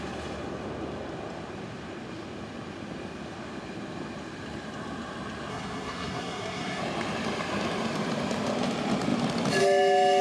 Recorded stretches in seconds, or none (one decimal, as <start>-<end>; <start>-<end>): 0.0-5.5; 6.8-10.2